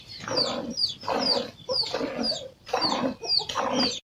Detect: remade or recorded recorded